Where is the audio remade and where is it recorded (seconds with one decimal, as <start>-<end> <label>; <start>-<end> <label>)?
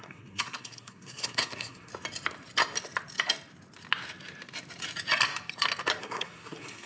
0.0-1.9 remade; 1.9-6.0 recorded; 6.0-6.9 remade